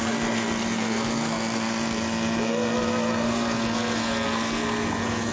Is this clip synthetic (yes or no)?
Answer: no